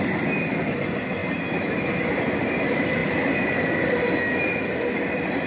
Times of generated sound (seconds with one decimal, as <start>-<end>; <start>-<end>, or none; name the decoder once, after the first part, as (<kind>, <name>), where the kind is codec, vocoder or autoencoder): none